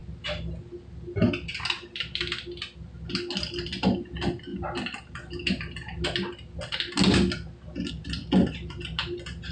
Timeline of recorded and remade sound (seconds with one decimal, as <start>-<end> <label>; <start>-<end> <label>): 0.0-9.5 recorded